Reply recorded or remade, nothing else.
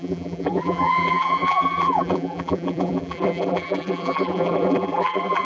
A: remade